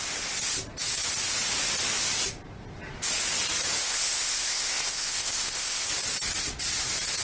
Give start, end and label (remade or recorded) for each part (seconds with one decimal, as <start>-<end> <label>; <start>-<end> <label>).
0.0-3.8 recorded; 3.8-5.9 remade; 5.9-7.2 recorded